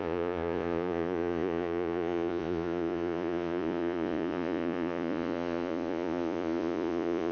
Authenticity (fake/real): fake